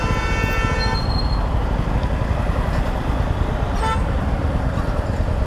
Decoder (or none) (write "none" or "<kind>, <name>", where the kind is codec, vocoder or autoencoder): none